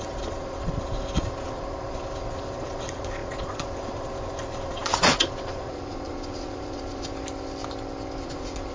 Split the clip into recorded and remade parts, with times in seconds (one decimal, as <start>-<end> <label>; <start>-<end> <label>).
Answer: 0.0-7.1 remade; 7.1-8.2 recorded; 8.2-8.7 remade